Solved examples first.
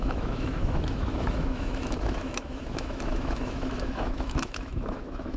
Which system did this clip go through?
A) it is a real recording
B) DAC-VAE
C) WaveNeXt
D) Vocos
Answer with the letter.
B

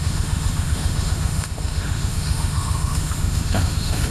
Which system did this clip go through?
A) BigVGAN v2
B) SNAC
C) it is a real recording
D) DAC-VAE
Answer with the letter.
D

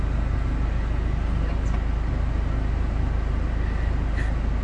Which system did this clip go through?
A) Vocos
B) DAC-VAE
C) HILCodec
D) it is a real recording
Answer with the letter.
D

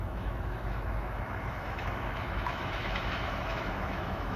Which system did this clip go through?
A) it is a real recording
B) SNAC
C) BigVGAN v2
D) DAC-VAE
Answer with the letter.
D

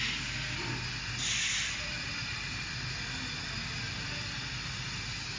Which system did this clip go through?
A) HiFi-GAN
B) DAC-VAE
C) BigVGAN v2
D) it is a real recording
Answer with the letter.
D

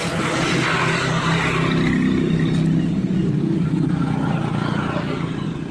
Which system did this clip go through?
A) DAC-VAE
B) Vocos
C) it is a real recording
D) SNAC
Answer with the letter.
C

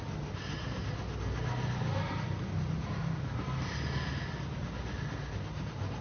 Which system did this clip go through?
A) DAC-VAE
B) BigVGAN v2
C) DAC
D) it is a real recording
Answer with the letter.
D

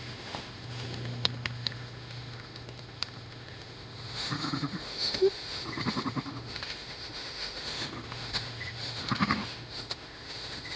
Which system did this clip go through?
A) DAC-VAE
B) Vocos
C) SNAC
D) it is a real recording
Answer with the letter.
A